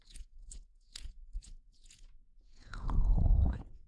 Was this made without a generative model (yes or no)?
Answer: no